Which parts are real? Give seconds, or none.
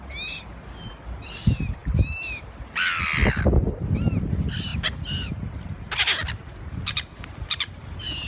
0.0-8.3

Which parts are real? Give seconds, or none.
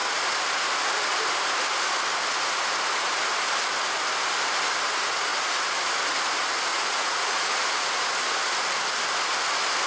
0.0-6.7; 7.9-9.9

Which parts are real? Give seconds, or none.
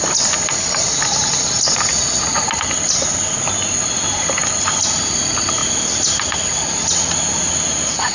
0.0-8.1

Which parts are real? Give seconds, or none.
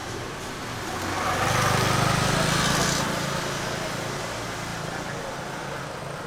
0.6-6.3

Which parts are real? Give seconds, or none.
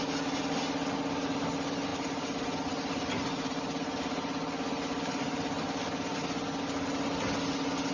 0.0-7.9